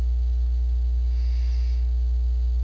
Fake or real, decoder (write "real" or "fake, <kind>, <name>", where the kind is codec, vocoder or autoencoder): real